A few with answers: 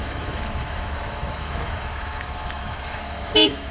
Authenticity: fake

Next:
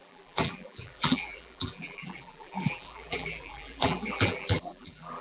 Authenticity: fake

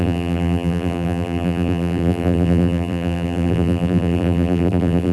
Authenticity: fake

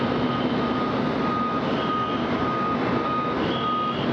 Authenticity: real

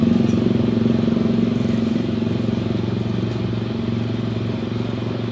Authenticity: real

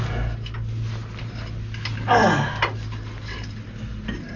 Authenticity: real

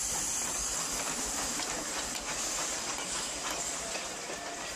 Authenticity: real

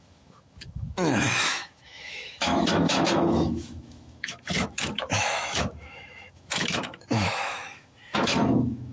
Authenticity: fake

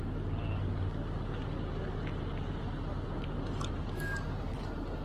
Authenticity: real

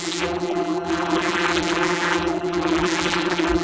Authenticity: fake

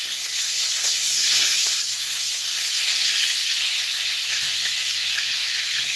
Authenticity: fake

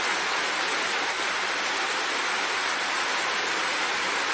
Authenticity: real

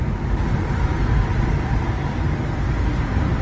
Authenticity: real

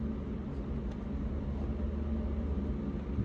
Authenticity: real